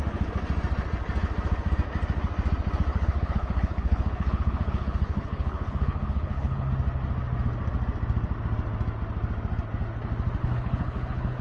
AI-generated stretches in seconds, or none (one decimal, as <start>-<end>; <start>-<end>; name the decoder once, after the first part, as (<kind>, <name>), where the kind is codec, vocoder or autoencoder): 2.9-6.7 (codec, HILCodec); 10.4-11.4